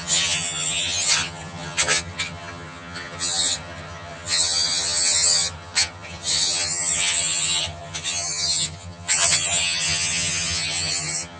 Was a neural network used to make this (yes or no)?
yes